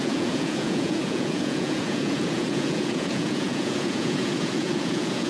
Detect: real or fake fake